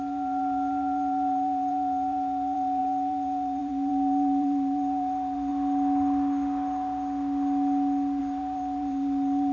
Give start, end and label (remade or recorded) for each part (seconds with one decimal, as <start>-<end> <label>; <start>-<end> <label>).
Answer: 0.0-5.5 remade; 5.5-8.2 recorded; 8.2-9.5 remade